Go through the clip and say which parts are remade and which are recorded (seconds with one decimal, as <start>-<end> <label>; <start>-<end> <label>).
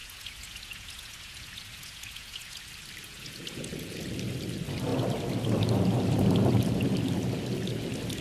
0.0-2.6 remade; 2.6-3.0 recorded; 3.0-4.0 remade; 4.0-8.2 recorded